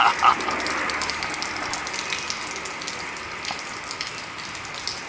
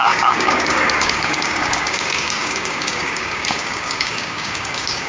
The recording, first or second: first